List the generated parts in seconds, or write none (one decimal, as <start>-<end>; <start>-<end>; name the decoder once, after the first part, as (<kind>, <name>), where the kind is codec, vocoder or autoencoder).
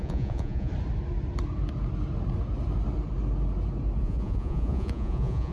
0.0-0.7 (vocoder, Vocos); 4.0-5.5